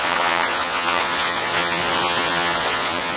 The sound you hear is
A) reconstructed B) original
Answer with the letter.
A